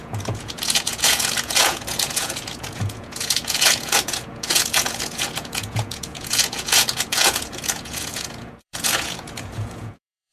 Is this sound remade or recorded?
remade